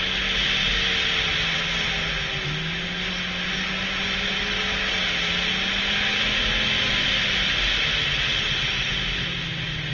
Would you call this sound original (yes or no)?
yes